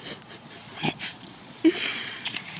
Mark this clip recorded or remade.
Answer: remade